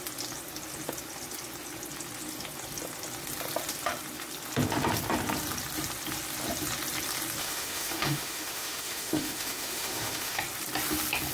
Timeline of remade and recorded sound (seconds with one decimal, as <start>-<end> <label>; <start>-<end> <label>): 0.0-7.4 recorded; 7.4-10.4 remade; 10.4-11.3 recorded